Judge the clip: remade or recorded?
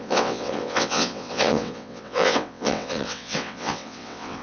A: remade